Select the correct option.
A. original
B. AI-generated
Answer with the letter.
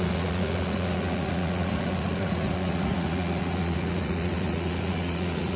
B